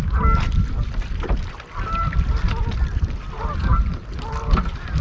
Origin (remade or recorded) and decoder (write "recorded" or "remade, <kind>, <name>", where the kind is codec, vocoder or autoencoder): recorded